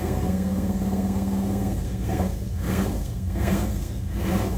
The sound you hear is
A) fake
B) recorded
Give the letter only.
A